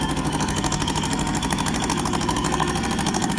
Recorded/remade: remade